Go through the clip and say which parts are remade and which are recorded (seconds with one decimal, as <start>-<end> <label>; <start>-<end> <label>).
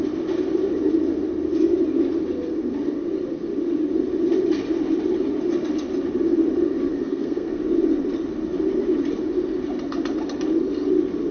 0.0-6.9 recorded; 6.9-7.6 remade; 7.6-11.3 recorded